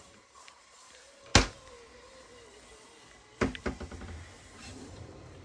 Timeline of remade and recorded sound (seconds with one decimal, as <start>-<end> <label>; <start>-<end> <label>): 0.0-1.3 remade; 1.3-4.5 recorded; 4.5-5.4 remade

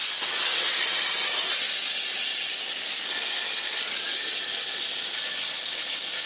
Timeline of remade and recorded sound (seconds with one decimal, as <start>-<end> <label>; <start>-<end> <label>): 0.0-6.3 recorded

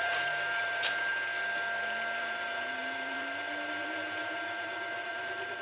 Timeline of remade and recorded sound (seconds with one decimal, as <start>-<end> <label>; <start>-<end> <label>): 0.0-1.1 remade; 1.1-2.2 recorded; 2.2-5.6 remade

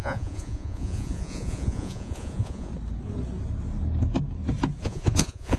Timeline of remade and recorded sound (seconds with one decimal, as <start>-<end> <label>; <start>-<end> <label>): 0.0-2.7 remade; 2.7-4.8 recorded; 4.8-5.6 remade

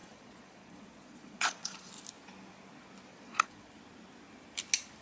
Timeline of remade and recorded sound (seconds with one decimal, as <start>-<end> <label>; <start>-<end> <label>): 0.0-1.9 remade; 1.9-3.1 recorded; 3.1-3.7 remade; 3.7-5.0 recorded